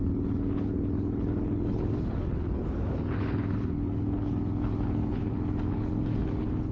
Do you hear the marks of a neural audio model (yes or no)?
yes